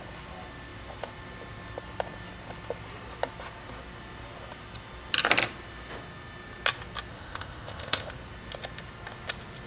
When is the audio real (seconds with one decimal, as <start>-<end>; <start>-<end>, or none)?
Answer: 0.0-7.1; 8.1-9.7